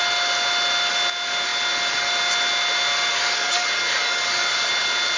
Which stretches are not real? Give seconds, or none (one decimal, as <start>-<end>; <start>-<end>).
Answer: 3.1-4.7